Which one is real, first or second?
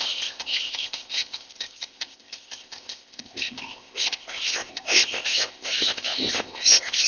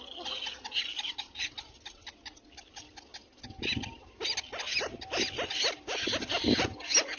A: second